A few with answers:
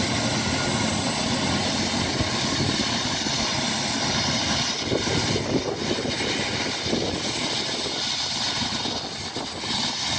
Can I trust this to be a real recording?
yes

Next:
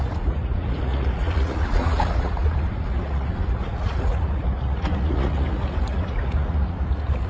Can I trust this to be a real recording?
no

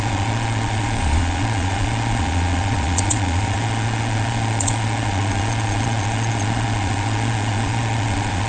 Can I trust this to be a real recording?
no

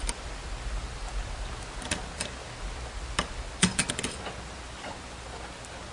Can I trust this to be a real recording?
yes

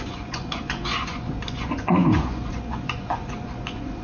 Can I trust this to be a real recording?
no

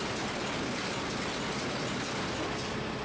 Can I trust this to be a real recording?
yes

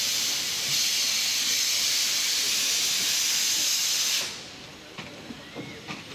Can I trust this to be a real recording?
yes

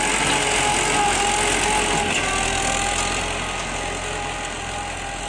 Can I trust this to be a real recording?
yes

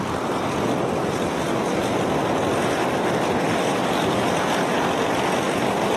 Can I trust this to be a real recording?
yes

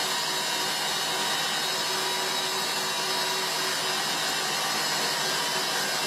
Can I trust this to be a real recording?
yes